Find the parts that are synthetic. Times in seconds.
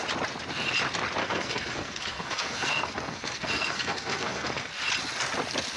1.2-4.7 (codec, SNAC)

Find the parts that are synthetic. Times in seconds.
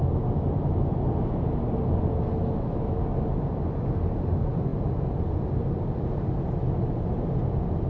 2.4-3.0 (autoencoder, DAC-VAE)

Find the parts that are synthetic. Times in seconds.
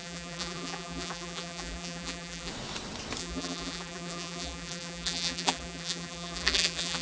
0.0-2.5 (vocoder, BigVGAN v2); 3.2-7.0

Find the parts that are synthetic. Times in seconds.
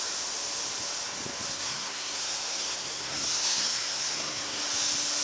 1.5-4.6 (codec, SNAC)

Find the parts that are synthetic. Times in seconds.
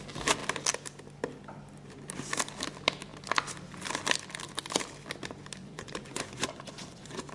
5.6-7.3 (vocoder, Vocos)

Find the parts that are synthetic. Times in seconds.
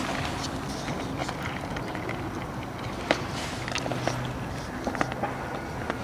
none